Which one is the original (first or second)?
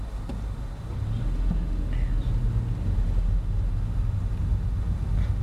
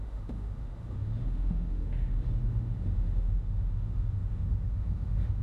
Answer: first